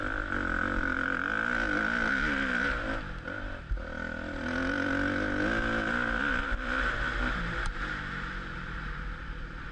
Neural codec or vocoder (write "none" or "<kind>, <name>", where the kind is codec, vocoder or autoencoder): none